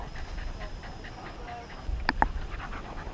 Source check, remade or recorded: recorded